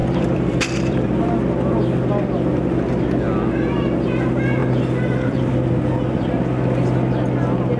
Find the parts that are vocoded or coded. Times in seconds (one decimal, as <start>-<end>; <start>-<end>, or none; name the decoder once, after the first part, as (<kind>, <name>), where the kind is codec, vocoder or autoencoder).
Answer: 0.0-1.2 (vocoder, BigVGAN v2); 4.6-5.7